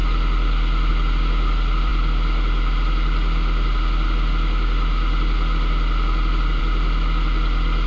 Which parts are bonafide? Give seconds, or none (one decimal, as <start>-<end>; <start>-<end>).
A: 0.0-7.9